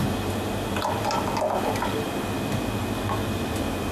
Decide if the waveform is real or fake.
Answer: real